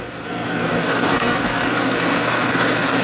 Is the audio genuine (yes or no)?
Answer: no